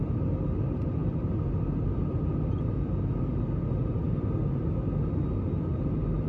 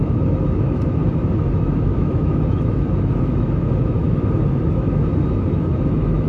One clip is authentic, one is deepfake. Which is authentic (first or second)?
first